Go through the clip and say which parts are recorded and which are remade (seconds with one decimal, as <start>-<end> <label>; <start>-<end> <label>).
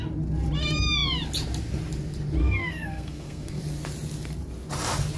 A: 0.0-2.4 recorded; 2.4-3.6 remade; 3.6-5.2 recorded